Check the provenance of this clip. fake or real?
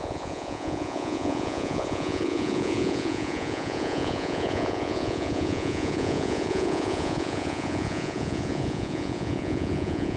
fake